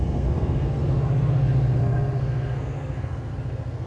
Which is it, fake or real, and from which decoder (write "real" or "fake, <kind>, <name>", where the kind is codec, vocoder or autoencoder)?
fake, codec, SNAC